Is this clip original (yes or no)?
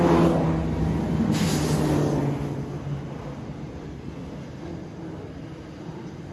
yes